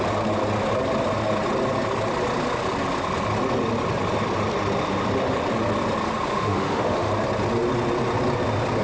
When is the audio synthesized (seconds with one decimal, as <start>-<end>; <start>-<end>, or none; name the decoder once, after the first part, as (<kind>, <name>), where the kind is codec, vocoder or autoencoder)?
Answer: 6.3-7.1 (autoencoder, DAC-VAE)